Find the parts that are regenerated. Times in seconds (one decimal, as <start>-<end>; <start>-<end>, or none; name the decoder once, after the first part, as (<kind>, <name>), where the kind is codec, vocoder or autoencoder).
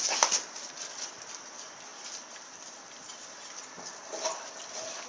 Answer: none